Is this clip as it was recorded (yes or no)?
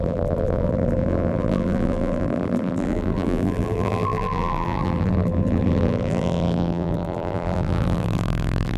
no